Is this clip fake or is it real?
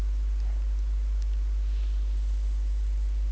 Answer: fake